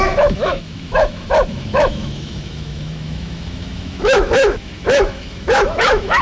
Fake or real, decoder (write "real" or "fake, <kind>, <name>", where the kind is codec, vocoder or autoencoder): fake, autoencoder, DAC-VAE